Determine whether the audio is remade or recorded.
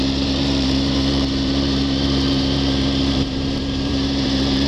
remade